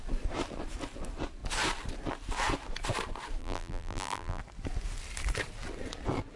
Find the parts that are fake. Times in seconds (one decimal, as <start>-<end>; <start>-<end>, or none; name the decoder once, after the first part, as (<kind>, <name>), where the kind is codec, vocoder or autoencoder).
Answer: 3.4-4.4 (vocoder, BigVGAN v2)